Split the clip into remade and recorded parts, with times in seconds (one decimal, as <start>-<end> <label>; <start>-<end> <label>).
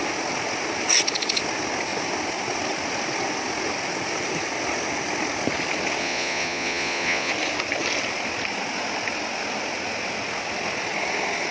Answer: 0.0-6.0 recorded; 6.0-7.3 remade; 7.3-11.5 recorded